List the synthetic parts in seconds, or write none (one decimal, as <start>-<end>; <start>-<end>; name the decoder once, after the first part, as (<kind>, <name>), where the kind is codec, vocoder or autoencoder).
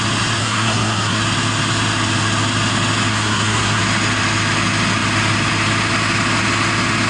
0.4-1.2 (codec, SNAC); 3.1-3.8